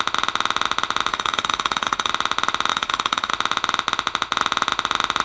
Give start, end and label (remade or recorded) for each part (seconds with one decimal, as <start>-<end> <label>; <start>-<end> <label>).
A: 0.0-1.1 recorded; 1.1-2.1 remade; 2.1-2.7 recorded; 2.7-3.3 remade; 3.3-5.2 recorded